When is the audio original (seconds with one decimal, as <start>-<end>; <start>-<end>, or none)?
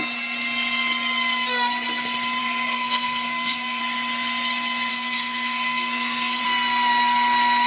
0.0-2.4; 3.8-4.9; 6.4-7.7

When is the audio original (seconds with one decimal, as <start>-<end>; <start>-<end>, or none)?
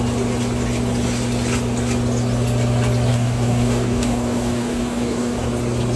0.0-3.1; 5.5-6.0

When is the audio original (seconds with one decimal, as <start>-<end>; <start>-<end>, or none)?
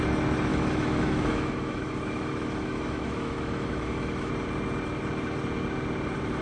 0.0-0.5; 4.3-6.4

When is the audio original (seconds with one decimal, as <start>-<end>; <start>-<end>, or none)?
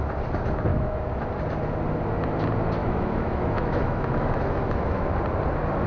0.0-0.7; 1.3-2.8; 5.2-5.9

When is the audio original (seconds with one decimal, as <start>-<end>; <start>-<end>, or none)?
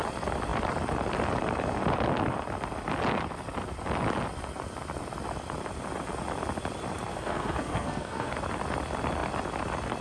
0.0-7.1; 8.3-10.0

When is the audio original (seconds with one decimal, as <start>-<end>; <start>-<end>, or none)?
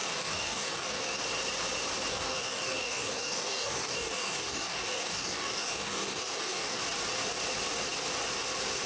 1.2-2.1; 6.8-8.9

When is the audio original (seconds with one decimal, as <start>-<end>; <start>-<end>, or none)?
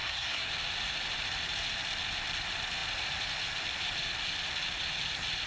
0.5-5.5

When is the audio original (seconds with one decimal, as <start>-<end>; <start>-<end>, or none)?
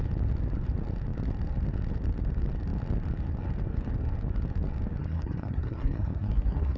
0.0-5.0